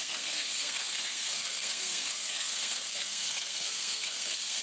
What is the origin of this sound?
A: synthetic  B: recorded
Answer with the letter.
A